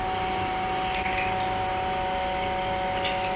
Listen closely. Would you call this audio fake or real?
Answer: real